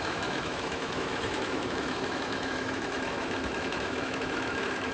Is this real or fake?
fake